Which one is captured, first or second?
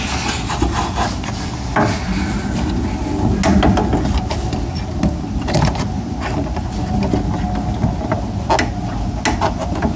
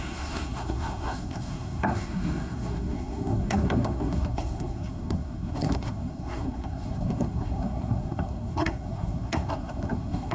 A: first